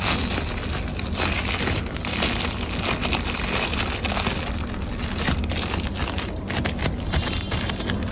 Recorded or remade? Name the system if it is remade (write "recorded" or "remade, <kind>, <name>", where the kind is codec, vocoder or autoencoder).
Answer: recorded